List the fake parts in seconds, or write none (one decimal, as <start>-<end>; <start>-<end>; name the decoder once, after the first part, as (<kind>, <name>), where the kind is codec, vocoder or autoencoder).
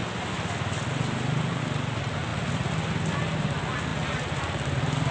none